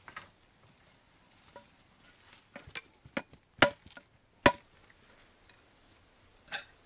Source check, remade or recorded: recorded